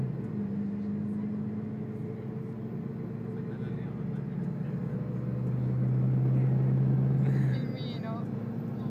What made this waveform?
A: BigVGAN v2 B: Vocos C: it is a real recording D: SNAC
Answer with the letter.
C